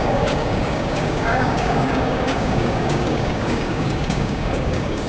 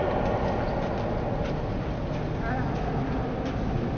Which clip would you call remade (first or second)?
first